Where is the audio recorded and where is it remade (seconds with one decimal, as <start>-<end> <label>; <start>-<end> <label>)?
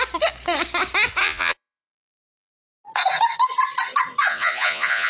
0.0-1.2 recorded; 1.2-2.5 remade; 2.5-4.3 recorded; 4.3-5.1 remade